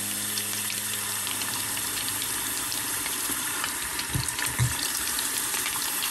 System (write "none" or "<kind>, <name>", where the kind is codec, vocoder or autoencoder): vocoder, BigVGAN v2